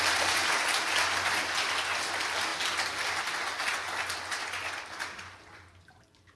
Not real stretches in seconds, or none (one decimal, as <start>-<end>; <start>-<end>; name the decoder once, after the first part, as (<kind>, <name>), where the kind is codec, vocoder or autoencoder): none